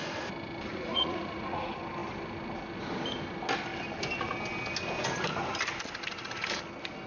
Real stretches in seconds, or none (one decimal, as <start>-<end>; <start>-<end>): 0.0-0.7; 1.6-7.1